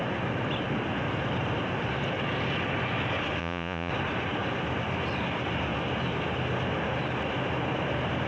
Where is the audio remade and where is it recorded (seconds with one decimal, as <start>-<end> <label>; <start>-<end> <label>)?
0.0-3.4 recorded; 3.4-3.9 remade; 3.9-8.3 recorded